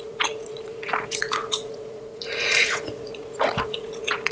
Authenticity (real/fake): fake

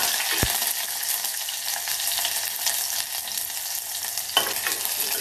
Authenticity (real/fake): real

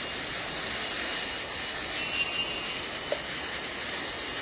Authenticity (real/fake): real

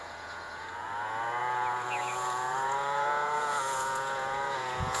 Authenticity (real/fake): fake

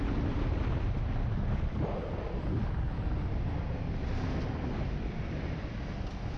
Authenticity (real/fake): real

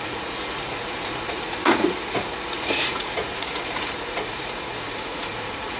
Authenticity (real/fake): fake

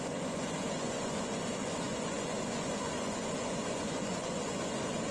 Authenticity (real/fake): fake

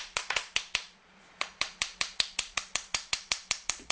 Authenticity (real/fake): fake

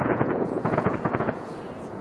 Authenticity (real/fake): fake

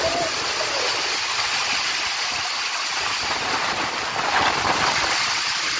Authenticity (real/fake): real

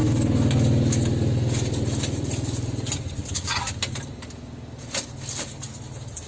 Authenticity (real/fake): real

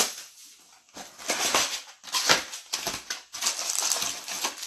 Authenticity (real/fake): real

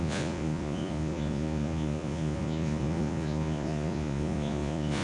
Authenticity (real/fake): fake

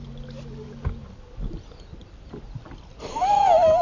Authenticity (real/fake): real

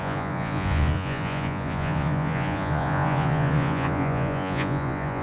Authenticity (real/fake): fake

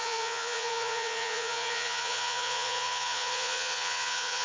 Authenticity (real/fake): fake